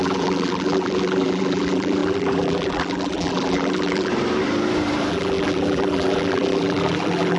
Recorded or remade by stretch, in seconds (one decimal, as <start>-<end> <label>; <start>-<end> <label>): 0.0-4.1 remade; 4.1-5.1 recorded; 5.1-7.4 remade